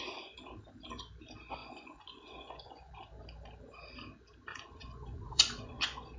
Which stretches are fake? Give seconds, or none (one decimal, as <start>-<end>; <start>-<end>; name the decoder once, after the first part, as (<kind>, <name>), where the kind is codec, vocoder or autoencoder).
1.6-2.9 (vocoder, Vocos); 4.5-6.2